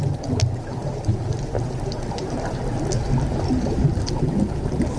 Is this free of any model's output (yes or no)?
yes